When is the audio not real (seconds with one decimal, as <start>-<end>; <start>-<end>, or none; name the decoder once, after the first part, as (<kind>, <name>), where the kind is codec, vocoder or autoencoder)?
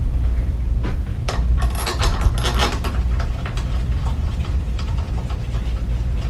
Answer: 1.1-2.2 (vocoder, BigVGAN v2); 2.6-5.1